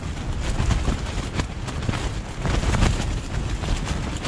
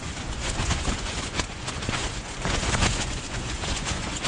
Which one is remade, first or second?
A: second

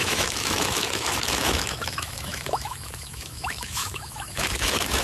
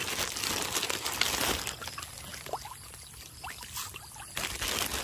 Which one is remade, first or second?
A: first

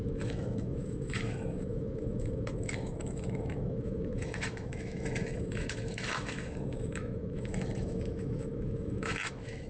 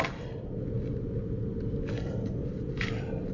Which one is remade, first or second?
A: first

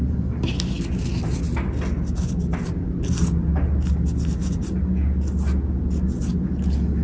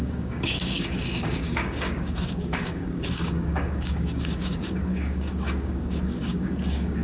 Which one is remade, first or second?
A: second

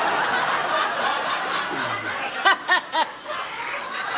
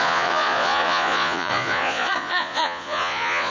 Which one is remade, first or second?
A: second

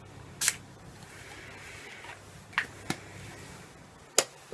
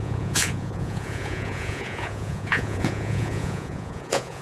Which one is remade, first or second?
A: second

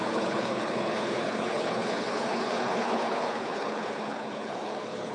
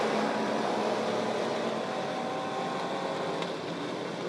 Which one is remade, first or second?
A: first